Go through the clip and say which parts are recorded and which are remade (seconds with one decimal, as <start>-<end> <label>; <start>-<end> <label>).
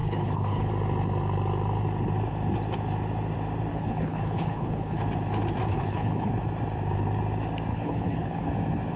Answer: 0.0-0.7 remade; 0.7-3.7 recorded; 3.7-5.0 remade; 5.0-5.7 recorded; 5.7-6.3 remade; 6.3-7.7 recorded; 7.7-8.5 remade; 8.5-9.0 recorded